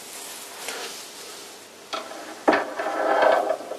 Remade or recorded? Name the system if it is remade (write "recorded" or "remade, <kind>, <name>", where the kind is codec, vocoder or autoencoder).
recorded